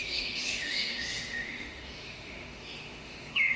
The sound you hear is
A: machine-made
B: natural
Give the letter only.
A